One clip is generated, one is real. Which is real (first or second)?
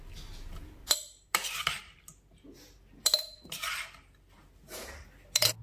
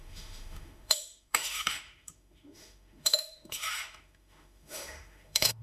first